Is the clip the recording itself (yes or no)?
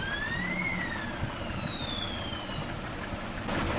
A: yes